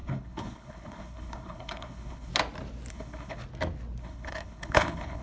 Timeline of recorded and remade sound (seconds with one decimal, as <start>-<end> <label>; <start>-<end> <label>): 0.0-2.3 remade; 2.3-2.9 recorded; 2.9-3.4 remade; 3.4-4.0 recorded; 4.0-5.2 remade